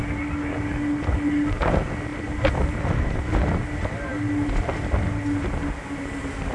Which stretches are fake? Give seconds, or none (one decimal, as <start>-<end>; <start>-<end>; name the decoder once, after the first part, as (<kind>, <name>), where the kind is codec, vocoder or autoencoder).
none